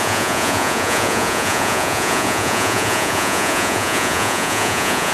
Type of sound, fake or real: fake